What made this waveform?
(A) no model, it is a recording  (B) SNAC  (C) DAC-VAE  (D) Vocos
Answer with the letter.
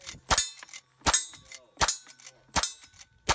A